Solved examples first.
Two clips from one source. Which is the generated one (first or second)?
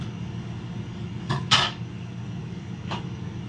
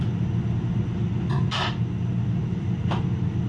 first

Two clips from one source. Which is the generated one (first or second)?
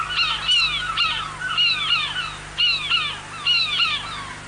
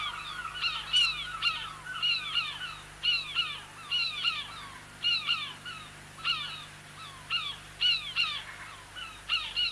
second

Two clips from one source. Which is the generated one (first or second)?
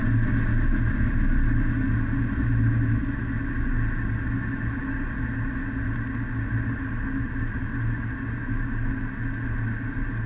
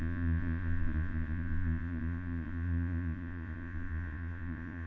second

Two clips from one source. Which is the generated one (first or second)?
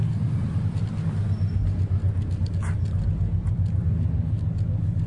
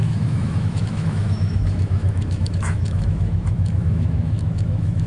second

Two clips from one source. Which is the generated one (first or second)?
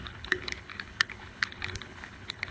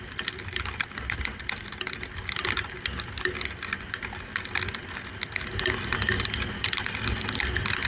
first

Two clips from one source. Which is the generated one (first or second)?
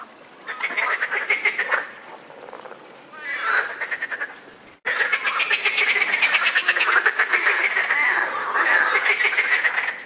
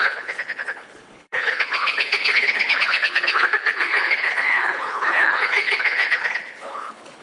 second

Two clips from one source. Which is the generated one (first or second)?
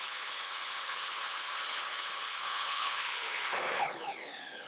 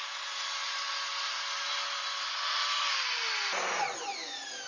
first